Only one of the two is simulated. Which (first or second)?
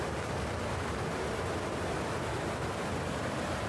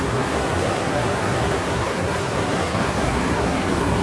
second